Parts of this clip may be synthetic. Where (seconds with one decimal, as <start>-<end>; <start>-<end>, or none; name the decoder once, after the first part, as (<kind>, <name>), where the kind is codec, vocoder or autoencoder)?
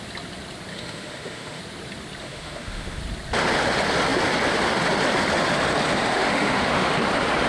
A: 0.7-1.6 (autoencoder, DAC-VAE); 2.2-3.0; 6.1-6.9